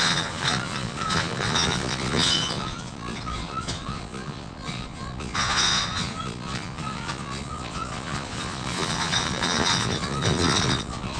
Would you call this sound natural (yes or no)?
no